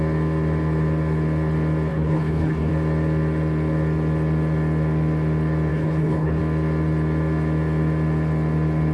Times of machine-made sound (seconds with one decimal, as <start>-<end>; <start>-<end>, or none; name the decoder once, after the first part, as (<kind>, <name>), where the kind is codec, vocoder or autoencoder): 1.9-2.7 (codec, HILCodec); 5.7-6.4